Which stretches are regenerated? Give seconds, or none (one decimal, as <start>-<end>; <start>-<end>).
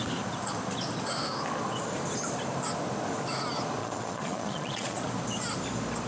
3.8-5.0